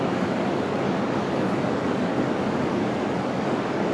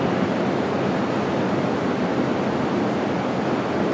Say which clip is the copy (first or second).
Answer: first